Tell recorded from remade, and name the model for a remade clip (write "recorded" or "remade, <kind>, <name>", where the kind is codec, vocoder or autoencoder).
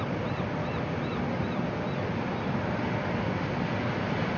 recorded